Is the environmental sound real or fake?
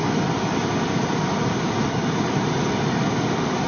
real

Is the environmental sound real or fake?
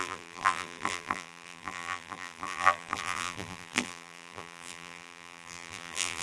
fake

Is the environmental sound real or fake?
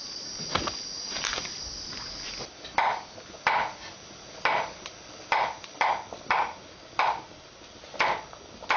real